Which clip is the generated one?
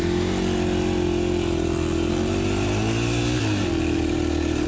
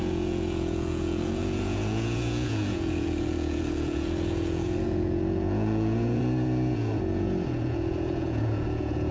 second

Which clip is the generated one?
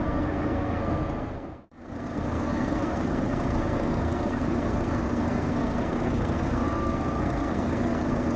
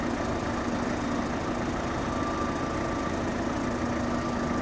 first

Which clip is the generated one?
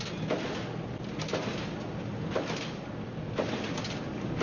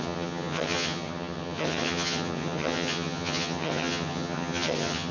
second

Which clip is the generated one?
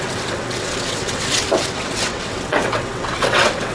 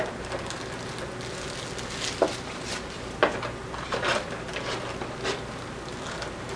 first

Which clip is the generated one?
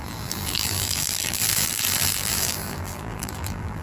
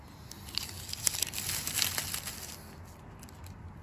first